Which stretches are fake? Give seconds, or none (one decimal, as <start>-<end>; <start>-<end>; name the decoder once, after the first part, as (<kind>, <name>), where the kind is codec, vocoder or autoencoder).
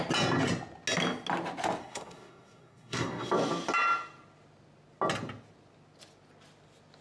1.8-3.3 (codec, SNAC)